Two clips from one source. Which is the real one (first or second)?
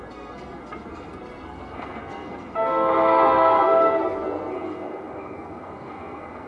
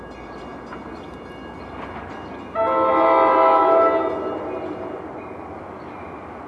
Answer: second